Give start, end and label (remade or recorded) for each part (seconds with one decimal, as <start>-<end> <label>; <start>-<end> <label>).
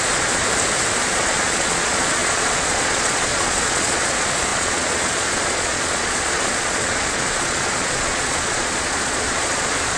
0.0-0.4 remade; 0.4-1.0 recorded; 1.0-10.0 remade